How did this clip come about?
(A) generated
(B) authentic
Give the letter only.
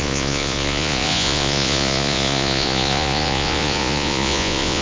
A